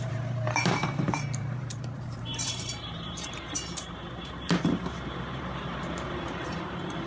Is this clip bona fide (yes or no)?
no